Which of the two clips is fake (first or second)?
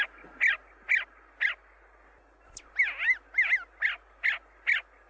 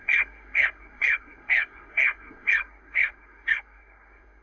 second